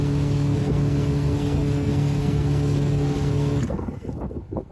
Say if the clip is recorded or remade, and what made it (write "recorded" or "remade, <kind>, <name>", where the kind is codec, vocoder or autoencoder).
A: remade, codec, SNAC